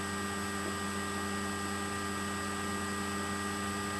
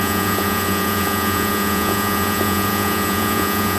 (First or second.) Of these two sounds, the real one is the first